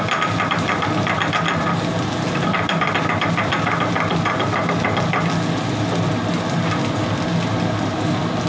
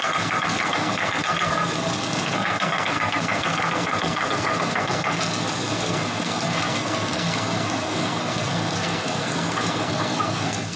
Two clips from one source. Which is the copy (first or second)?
second